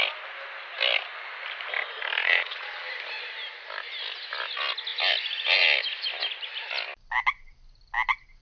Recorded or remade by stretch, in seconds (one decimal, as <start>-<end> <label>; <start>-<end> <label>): 0.0-2.2 recorded; 2.2-2.9 remade; 2.9-8.4 recorded